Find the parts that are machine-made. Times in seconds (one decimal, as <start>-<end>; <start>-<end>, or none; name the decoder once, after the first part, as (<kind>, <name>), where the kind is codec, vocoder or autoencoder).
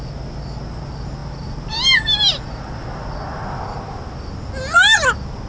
none